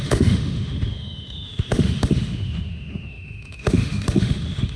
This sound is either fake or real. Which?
fake